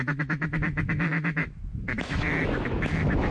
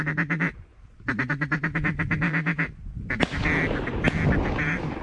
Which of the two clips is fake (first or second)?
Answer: first